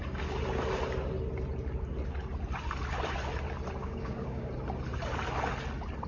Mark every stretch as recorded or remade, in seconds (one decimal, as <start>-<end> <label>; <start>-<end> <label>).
0.0-3.8 recorded; 3.8-4.5 remade; 4.5-6.1 recorded